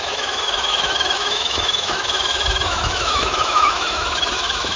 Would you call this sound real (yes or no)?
no